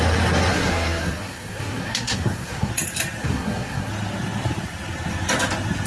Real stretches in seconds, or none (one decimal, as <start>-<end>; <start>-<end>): 0.0-0.5; 2.7-3.2; 3.9-5.9